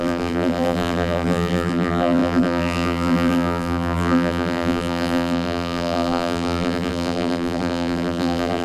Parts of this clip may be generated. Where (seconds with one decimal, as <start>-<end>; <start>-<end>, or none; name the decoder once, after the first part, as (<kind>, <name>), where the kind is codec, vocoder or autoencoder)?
0.0-8.6 (vocoder, BigVGAN v2)